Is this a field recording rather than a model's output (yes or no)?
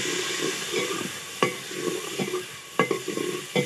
yes